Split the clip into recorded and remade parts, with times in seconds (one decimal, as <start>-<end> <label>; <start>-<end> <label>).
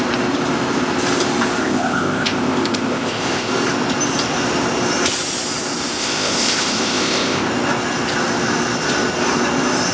0.0-1.6 recorded; 1.6-3.5 remade; 3.5-6.0 recorded; 6.0-7.5 remade; 7.5-9.9 recorded